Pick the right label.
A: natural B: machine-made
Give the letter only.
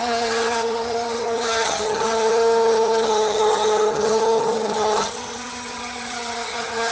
B